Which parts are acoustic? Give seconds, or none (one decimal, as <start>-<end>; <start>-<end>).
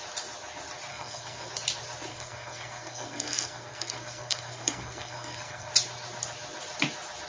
0.0-0.9; 1.5-2.1; 5.7-7.3